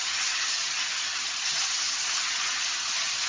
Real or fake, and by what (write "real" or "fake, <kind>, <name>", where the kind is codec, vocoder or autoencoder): fake, vocoder, HiFi-GAN